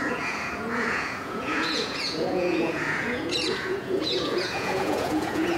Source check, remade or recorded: remade